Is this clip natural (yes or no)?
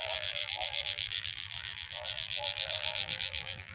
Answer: no